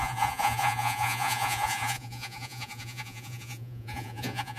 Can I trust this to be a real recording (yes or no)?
no